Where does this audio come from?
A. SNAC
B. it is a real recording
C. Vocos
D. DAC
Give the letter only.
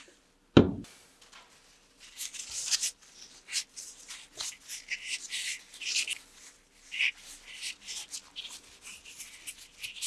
B